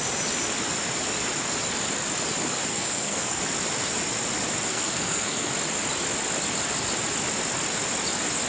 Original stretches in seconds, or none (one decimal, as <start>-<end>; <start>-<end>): 0.0-2.7; 3.4-4.7; 5.5-8.5